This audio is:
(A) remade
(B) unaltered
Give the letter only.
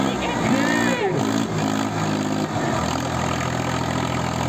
B